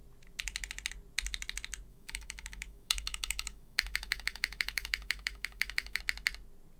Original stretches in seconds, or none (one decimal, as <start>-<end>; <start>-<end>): 0.0-1.9; 6.0-6.8